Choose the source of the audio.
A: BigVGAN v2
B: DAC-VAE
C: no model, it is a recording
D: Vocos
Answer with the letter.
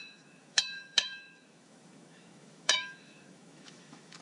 B